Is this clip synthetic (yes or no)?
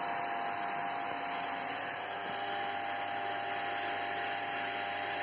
no